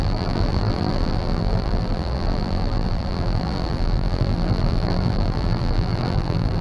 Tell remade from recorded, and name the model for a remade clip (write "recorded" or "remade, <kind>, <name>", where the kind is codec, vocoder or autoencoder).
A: remade, vocoder, BigVGAN v2